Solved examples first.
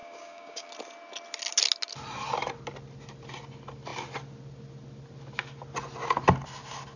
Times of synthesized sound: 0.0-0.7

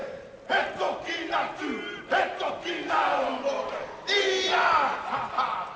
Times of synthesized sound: none

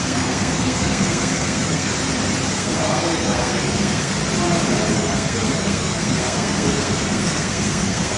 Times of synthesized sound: 0.0-1.9; 2.5-4.2; 4.9-8.2

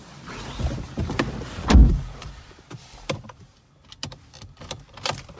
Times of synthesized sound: 1.0-5.4